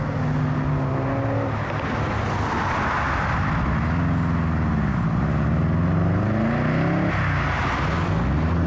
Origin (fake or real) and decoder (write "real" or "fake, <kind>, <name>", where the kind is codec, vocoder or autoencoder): real